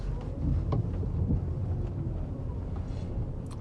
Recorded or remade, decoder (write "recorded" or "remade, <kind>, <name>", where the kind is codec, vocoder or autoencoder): recorded